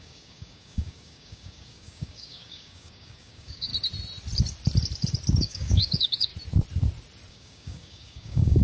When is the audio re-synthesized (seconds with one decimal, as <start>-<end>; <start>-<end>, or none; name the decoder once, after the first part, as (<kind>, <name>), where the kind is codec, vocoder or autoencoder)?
0.0-3.7 (codec, DAC); 5.4-6.3; 7.3-8.6